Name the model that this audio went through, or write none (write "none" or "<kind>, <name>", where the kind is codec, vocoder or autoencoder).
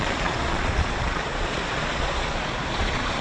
vocoder, Vocos